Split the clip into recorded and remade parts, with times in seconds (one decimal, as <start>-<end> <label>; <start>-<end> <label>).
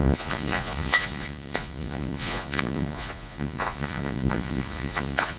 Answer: 0.0-5.4 remade